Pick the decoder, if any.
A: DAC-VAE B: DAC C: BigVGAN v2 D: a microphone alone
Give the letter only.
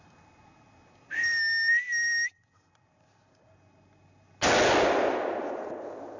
D